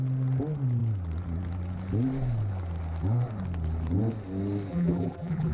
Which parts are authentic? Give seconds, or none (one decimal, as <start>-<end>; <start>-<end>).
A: 0.0-4.7